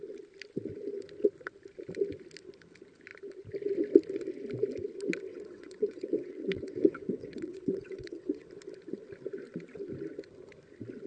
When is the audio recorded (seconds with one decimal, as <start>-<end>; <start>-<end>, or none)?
0.0-5.3; 8.5-11.1